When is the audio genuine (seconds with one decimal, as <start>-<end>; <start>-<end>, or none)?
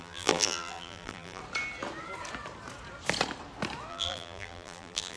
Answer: 1.4-3.9